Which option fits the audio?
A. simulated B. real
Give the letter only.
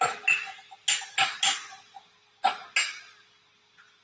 B